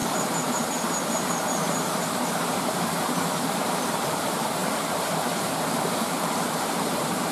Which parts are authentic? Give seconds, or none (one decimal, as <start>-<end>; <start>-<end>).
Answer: none